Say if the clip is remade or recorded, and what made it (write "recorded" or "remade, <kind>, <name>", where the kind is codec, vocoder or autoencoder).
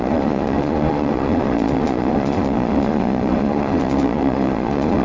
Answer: remade, vocoder, Vocos